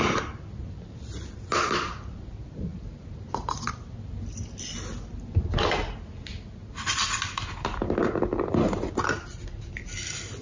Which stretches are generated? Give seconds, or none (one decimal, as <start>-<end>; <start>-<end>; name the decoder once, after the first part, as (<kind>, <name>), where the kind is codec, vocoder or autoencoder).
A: 2.7-3.5 (vocoder, BigVGAN v2)